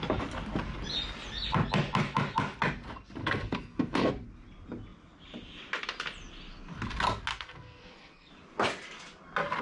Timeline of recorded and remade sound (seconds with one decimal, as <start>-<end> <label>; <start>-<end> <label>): 0.0-3.2 recorded; 3.2-4.1 remade; 4.1-7.3 recorded; 7.3-8.3 remade; 8.3-9.6 recorded

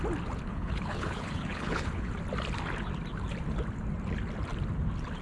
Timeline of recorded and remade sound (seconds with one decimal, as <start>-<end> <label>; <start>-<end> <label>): 0.0-0.5 recorded; 0.5-2.1 remade; 2.1-5.2 recorded

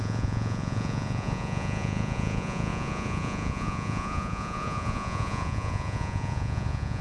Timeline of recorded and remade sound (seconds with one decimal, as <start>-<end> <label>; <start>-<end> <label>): 0.0-7.0 remade

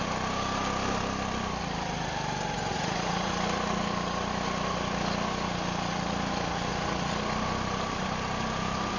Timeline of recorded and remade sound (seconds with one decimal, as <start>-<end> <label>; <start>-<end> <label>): 0.0-2.7 recorded; 2.7-3.3 remade; 3.3-9.0 recorded

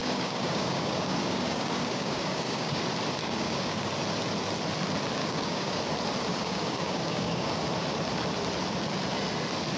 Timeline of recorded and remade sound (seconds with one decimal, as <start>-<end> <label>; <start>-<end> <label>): 0.0-2.8 remade; 2.8-3.2 recorded; 3.2-3.9 remade; 3.9-5.2 recorded; 5.2-5.8 remade; 5.8-6.3 recorded; 6.3-7.5 remade; 7.5-9.8 recorded

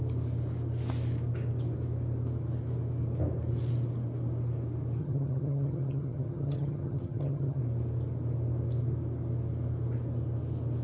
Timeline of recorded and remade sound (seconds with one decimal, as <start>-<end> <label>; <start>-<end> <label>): 0.0-5.0 recorded; 5.0-7.6 remade; 7.6-10.8 recorded

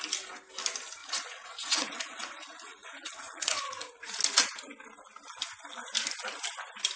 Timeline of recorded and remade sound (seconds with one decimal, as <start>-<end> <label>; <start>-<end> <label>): 0.0-1.0 recorded; 1.0-4.2 remade; 4.2-7.0 recorded

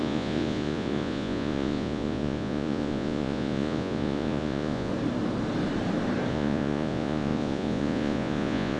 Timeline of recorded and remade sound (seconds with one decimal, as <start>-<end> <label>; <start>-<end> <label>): 0.0-4.9 remade; 4.9-6.3 recorded; 6.3-8.8 remade